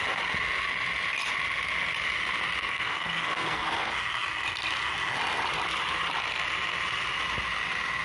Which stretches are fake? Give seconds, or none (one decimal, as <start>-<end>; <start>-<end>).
2.6-3.9